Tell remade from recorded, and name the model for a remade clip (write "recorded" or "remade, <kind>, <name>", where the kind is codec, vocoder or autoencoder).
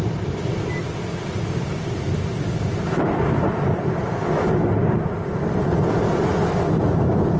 recorded